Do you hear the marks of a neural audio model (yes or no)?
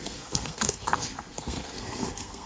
yes